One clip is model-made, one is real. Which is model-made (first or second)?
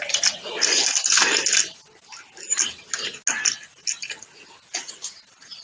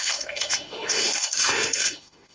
second